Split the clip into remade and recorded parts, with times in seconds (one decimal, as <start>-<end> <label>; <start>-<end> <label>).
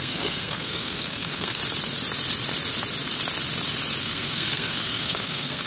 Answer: 0.0-1.6 remade; 1.6-4.0 recorded; 4.0-5.7 remade